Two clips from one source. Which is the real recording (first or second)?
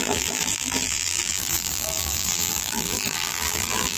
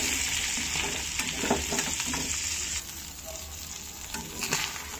second